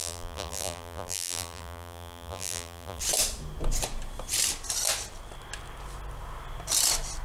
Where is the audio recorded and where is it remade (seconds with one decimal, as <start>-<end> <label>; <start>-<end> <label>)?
0.0-3.0 remade; 3.0-7.2 recorded